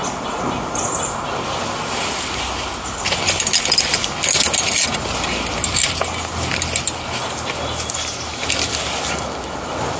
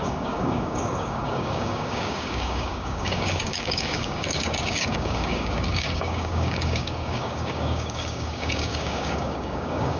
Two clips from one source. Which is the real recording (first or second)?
first